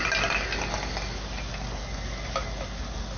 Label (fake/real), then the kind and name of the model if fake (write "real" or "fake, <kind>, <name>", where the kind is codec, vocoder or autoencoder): real